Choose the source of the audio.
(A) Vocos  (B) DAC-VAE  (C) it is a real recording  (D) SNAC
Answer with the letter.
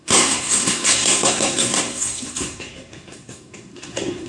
D